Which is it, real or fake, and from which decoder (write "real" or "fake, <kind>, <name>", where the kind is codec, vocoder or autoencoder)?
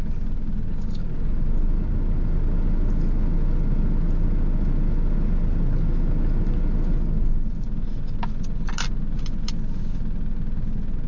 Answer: real